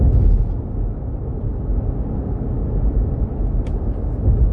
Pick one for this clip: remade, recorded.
recorded